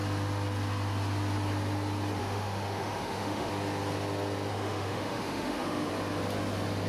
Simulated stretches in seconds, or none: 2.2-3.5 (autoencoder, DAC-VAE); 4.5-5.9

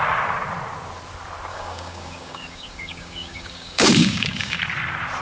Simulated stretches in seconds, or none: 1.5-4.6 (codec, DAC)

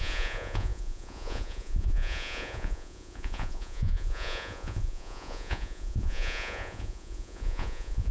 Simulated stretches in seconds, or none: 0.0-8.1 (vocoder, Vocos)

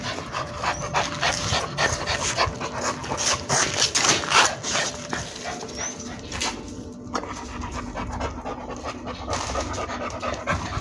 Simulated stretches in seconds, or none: none

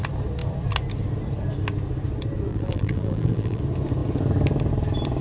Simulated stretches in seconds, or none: 2.5-3.6 (vocoder, BigVGAN v2)